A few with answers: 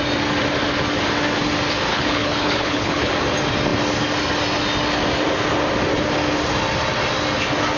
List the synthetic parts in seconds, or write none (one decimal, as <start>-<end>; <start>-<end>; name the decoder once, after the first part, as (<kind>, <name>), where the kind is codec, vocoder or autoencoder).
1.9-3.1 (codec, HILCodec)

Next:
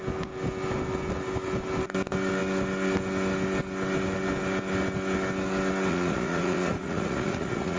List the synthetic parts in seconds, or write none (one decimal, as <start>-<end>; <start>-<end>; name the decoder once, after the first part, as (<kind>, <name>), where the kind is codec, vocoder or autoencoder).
5.9-7.8 (vocoder, Vocos)

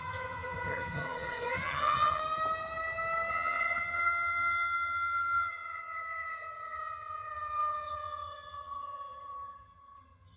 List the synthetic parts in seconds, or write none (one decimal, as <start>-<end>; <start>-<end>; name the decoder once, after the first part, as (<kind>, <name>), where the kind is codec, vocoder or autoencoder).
0.0-2.2 (vocoder, HiFi-GAN); 3.3-10.4

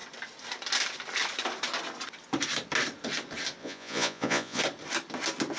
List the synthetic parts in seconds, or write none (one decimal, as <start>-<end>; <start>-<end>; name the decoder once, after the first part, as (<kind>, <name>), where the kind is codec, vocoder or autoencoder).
3.6-4.6 (vocoder, Vocos)

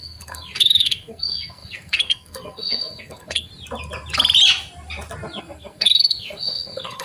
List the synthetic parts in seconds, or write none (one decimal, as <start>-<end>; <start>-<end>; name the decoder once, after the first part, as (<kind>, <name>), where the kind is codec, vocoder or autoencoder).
0.0-3.5 (codec, SNAC); 5.4-7.0

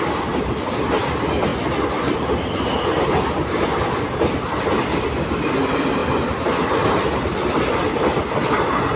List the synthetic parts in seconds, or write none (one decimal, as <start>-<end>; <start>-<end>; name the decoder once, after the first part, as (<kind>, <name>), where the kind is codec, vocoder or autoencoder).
none

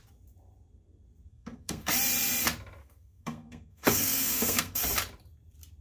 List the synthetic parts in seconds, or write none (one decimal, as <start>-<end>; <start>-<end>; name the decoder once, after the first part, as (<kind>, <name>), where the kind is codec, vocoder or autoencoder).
1.3-1.9 (codec, SNAC); 2.8-4.8